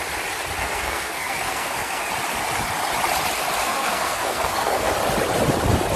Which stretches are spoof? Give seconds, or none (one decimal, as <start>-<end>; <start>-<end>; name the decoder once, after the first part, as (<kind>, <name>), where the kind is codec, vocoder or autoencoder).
0.6-2.1 (codec, SNAC); 3.6-4.9